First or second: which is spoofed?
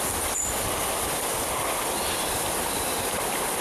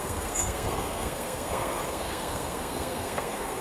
second